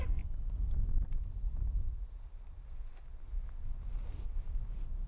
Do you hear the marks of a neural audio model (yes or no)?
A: no